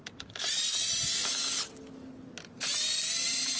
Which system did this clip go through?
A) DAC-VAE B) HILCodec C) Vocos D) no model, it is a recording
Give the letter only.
D